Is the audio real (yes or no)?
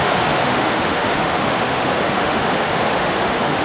no